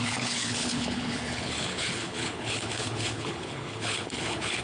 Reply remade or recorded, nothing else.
remade